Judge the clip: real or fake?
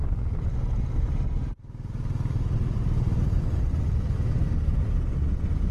real